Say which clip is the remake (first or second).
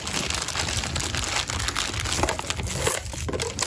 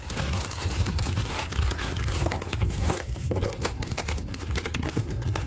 second